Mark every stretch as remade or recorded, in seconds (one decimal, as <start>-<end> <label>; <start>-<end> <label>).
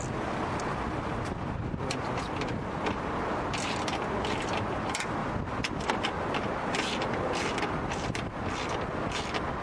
0.0-9.6 recorded